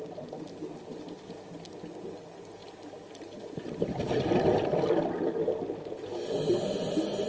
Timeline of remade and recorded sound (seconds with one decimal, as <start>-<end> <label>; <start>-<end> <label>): 0.0-7.3 recorded